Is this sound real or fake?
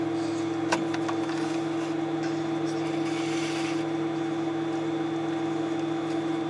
real